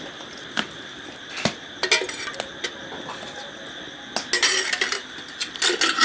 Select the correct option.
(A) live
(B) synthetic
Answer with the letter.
A